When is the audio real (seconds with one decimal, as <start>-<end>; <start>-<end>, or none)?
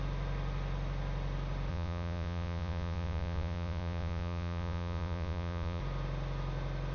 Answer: 0.0-1.7; 5.8-6.9